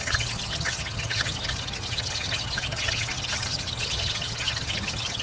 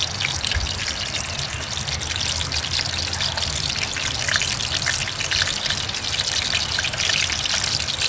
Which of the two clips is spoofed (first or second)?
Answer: first